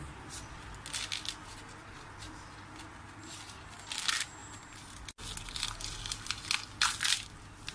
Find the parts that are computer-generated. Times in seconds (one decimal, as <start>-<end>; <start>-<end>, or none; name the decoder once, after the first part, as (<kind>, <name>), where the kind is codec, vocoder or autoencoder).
none